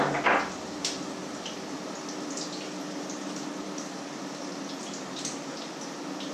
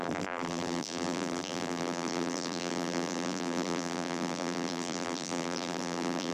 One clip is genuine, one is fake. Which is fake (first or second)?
second